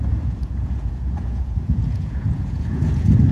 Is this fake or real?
fake